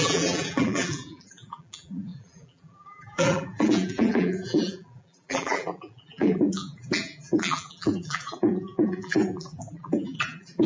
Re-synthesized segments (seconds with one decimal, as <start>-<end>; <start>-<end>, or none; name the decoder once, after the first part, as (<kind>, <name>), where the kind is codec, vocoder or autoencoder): 0.0-10.7 (vocoder, BigVGAN v2)